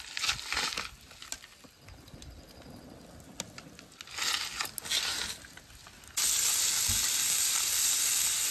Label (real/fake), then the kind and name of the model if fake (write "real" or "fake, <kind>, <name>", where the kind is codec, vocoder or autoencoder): real